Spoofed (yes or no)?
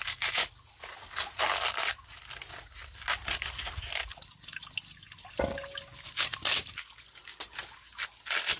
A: no